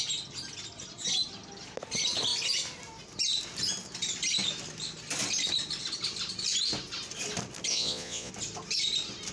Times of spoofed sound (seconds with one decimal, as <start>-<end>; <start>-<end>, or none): 7.7-8.3